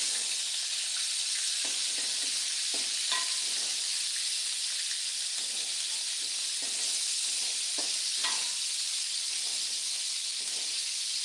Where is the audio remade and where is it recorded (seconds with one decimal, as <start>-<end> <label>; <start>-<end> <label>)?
0.0-11.2 recorded